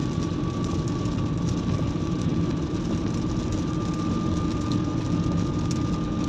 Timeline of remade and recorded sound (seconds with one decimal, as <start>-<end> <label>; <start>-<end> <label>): 0.0-6.3 recorded